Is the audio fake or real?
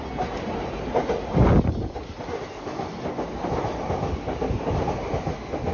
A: real